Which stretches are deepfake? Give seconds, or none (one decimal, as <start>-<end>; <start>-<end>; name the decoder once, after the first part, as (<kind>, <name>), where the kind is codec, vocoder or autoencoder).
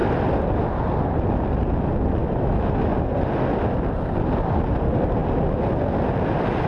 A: 2.2-2.9 (autoencoder, DAC-VAE)